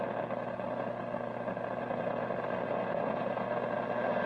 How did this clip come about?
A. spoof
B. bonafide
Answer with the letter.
B